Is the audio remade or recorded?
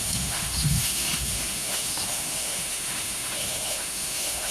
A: remade